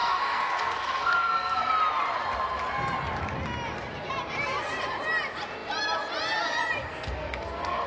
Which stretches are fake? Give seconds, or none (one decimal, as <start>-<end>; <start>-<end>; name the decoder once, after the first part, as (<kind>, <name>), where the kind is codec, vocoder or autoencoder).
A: 0.0-1.7 (codec, SNAC); 6.8-7.9